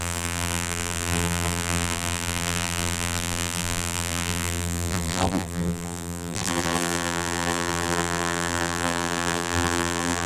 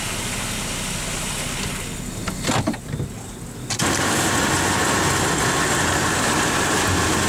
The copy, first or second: first